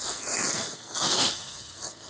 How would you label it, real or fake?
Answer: fake